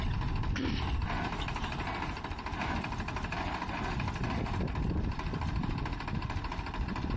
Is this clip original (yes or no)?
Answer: no